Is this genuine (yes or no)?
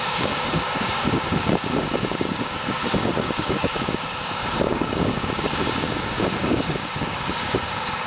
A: no